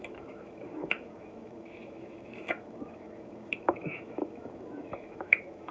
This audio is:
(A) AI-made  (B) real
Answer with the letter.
A